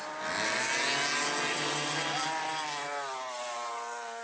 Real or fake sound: real